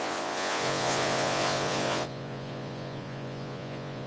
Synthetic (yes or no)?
yes